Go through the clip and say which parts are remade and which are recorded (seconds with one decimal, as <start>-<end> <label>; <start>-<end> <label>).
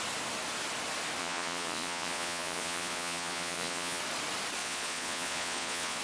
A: 0.0-1.2 recorded; 1.2-4.0 remade; 4.0-4.6 recorded; 4.6-6.0 remade